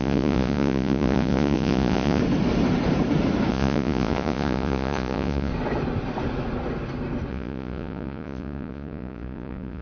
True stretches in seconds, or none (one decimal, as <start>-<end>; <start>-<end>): 2.2-3.5; 5.5-7.3